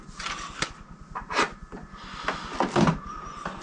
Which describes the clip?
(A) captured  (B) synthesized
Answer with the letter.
A